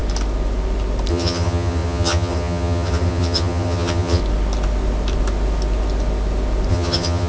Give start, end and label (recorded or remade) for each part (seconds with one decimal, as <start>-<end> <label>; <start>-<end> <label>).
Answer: 0.0-1.1 recorded; 1.1-4.2 remade; 4.2-6.7 recorded; 6.7-7.3 remade